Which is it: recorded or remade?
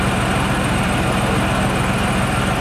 recorded